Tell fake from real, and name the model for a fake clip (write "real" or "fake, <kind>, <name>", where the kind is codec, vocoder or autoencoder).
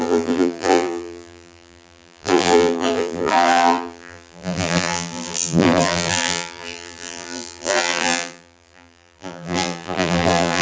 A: fake, vocoder, BigVGAN v2